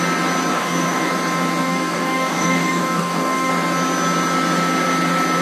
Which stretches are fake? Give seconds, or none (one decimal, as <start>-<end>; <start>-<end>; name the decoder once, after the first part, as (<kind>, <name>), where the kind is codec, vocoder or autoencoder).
0.5-1.1 (codec, DAC); 1.6-3.5